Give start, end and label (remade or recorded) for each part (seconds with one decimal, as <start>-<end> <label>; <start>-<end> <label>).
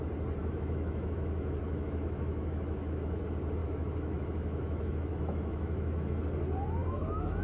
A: 0.0-0.4 recorded; 0.4-3.2 remade; 3.2-3.6 recorded; 3.6-6.2 remade; 6.2-6.8 recorded; 6.8-7.4 remade